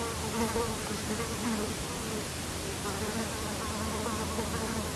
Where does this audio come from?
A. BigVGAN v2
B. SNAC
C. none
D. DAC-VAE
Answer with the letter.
A